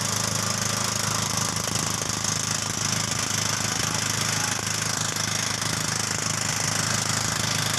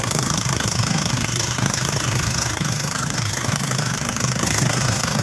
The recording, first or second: first